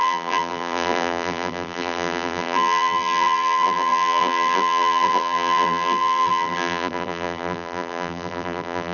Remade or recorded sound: remade